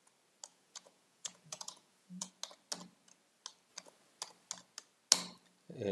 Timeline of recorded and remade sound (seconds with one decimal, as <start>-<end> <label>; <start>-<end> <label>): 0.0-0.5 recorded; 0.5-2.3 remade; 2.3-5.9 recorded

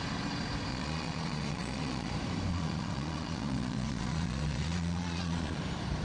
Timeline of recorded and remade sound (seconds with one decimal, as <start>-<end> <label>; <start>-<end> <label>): 0.0-0.7 recorded; 0.7-2.1 remade; 2.1-2.5 recorded; 2.5-5.6 remade; 5.6-6.0 recorded

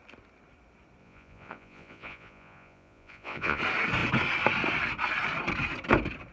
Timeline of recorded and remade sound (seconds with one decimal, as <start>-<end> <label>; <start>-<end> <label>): 0.0-1.0 recorded; 1.0-3.6 remade; 3.6-6.3 recorded

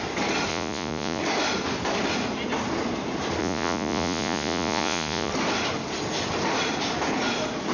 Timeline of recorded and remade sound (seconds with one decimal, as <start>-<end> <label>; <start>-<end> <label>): 0.0-0.5 recorded; 0.5-1.2 remade; 1.2-3.4 recorded; 3.4-5.3 remade; 5.3-7.7 recorded

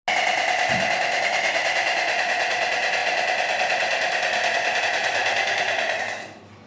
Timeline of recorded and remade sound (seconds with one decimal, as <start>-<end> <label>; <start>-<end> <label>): 0.0-6.7 recorded

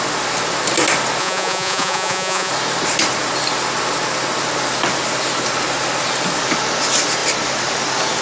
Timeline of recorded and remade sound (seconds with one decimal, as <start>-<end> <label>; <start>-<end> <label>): 0.0-1.2 recorded; 1.2-2.5 remade; 2.5-8.2 recorded

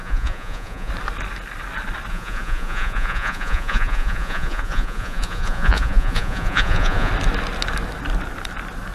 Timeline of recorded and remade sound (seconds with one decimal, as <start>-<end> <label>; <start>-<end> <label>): 0.0-0.9 remade; 0.9-2.1 recorded; 2.1-7.1 remade; 7.1-8.9 recorded

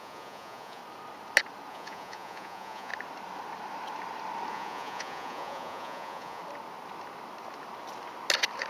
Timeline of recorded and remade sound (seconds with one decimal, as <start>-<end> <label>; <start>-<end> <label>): 0.0-0.8 remade; 0.8-1.7 recorded; 1.7-2.9 remade; 2.9-4.5 recorded; 4.5-6.4 remade; 6.4-8.7 recorded